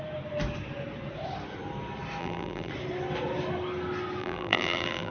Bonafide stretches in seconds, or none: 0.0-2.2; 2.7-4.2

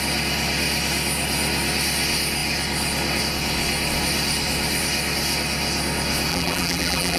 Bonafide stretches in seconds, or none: 0.0-6.3

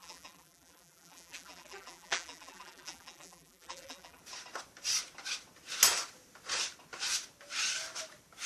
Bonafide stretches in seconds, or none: 4.2-8.5

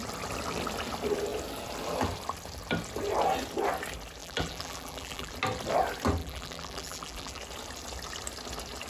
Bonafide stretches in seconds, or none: 0.0-4.2; 5.3-6.2; 7.4-8.9

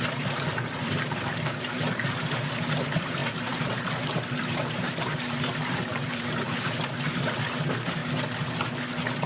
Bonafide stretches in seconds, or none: 8.0-9.3